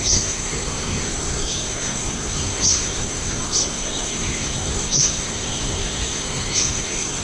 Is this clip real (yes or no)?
no